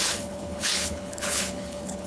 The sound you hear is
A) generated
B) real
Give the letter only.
A